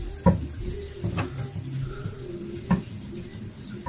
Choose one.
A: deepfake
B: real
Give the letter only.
B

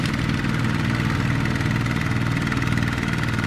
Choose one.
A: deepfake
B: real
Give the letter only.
B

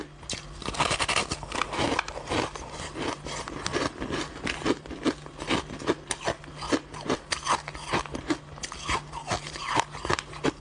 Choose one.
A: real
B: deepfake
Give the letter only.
A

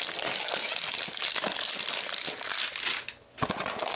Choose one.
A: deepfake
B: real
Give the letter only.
B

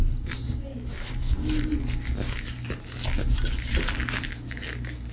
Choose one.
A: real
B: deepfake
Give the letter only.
A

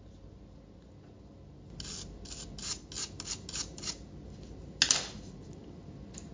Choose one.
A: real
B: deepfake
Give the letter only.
A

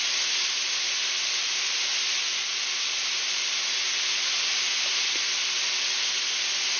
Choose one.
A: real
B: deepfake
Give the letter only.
A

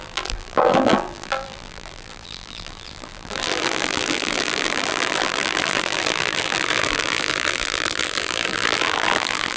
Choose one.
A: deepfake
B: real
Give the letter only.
A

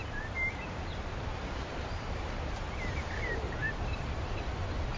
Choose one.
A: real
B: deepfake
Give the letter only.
B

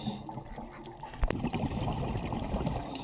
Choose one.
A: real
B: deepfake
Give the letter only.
A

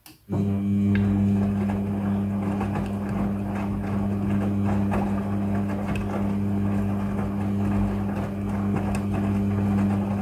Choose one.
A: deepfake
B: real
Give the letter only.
B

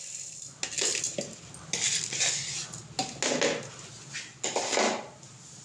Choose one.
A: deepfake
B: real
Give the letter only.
B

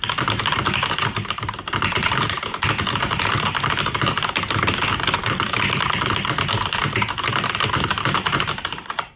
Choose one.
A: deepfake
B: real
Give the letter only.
A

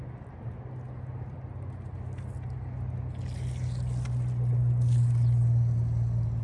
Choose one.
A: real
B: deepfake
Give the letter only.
A